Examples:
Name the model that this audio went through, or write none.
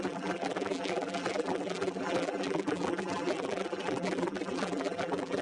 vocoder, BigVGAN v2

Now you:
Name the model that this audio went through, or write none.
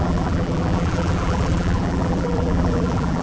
vocoder, BigVGAN v2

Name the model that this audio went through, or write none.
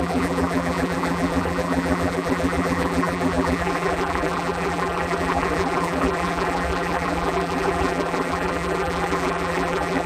vocoder, BigVGAN v2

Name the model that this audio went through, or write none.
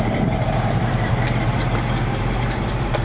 vocoder, BigVGAN v2